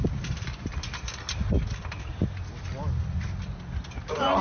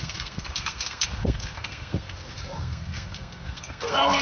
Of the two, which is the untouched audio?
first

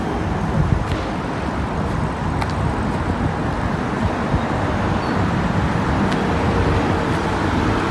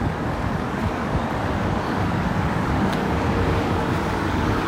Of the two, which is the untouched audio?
first